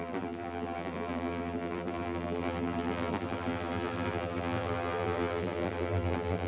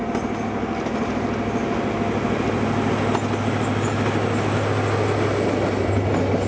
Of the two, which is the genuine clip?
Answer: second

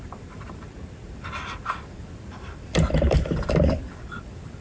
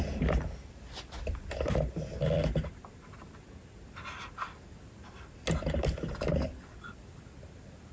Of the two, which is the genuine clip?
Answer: second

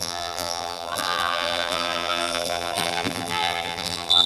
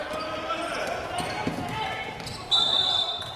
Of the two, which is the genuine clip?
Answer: second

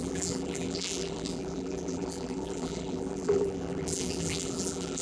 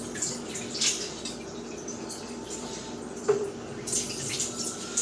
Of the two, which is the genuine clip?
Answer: second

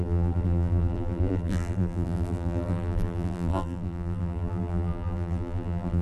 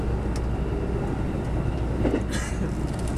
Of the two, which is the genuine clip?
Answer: second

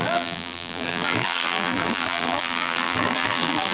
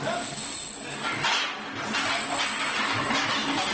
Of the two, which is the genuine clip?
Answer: second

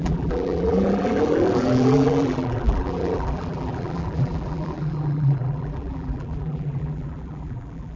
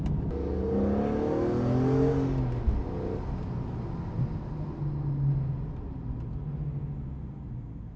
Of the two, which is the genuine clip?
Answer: second